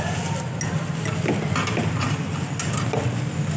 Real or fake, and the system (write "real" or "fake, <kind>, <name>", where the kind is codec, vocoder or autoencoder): real